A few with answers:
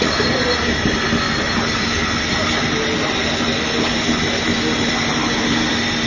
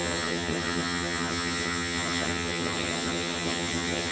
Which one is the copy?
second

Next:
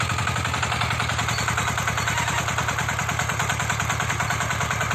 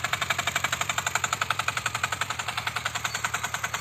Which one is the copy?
second